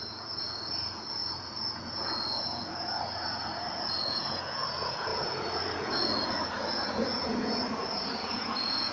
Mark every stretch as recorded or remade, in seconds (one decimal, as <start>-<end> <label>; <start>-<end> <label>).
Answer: 0.0-8.9 remade